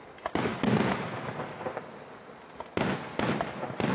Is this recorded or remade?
recorded